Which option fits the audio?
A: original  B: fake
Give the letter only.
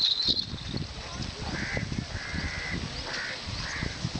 A